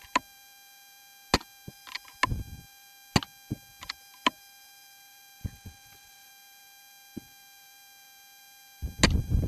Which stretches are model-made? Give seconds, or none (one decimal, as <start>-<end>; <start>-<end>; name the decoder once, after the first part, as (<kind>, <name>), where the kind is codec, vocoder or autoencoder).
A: 5.4-6.3 (vocoder, Vocos)